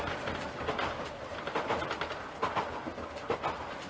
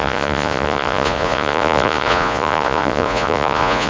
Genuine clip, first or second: first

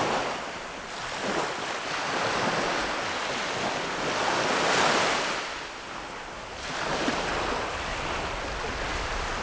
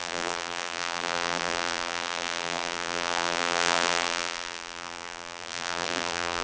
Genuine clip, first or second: first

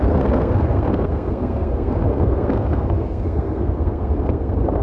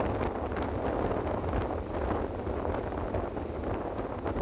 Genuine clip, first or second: second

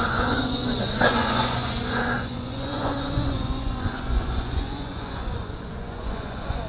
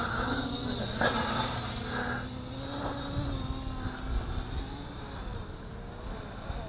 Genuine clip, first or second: second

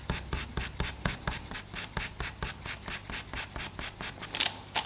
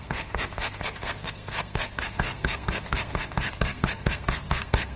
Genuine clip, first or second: first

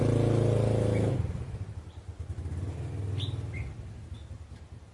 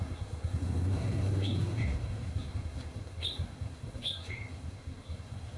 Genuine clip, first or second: first